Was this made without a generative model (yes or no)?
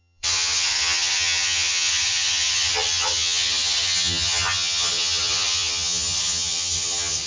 no